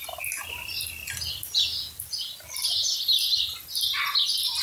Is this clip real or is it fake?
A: real